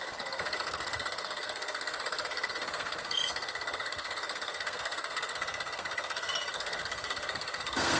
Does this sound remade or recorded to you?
remade